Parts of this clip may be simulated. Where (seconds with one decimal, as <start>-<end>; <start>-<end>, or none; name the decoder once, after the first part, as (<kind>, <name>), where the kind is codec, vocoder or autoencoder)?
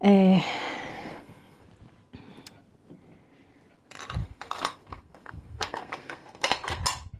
0.9-1.7 (codec, SNAC); 4.2-6.8